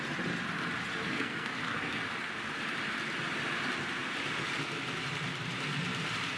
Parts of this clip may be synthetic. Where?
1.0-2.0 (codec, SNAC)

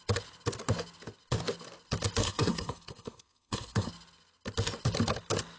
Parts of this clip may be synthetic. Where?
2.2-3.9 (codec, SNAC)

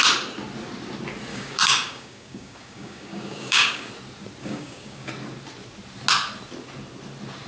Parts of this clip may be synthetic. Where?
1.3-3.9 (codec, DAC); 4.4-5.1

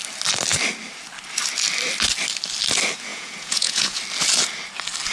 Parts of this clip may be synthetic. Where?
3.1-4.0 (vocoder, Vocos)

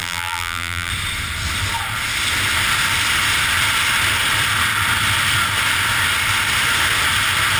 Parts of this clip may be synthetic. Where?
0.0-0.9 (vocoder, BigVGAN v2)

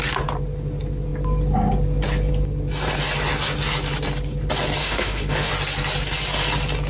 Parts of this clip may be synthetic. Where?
4.8-5.5 (autoencoder, DAC-VAE)

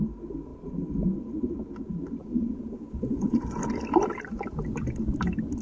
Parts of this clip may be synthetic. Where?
2.2-3.7 (vocoder, Vocos)

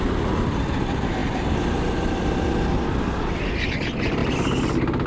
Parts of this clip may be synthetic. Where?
none